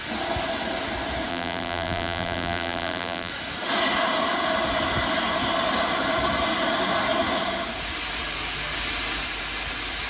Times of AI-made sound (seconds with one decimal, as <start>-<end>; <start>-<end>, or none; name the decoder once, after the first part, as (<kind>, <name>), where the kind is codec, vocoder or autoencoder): 1.3-3.3 (vocoder, BigVGAN v2)